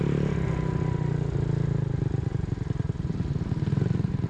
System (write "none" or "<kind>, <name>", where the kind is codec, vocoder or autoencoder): none